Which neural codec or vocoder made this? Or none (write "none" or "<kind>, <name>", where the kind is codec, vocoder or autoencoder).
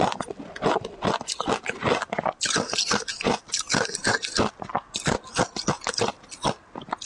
none